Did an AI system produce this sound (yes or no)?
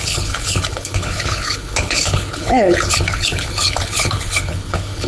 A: yes